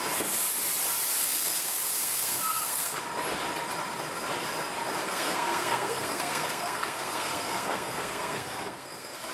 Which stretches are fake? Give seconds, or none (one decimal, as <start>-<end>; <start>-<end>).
1.2-3.0; 5.0-9.3